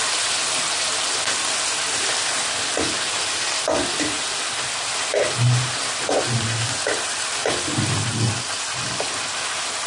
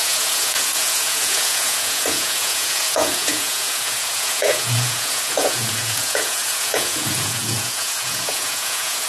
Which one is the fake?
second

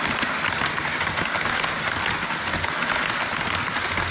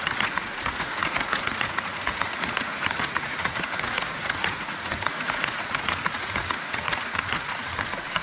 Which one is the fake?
second